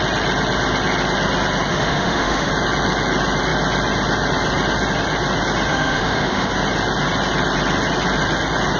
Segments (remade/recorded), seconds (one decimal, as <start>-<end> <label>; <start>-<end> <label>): 0.0-1.7 recorded; 1.7-2.5 remade; 2.5-5.7 recorded; 5.7-6.5 remade; 6.5-8.8 recorded